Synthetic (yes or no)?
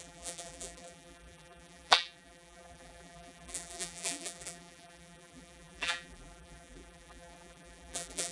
yes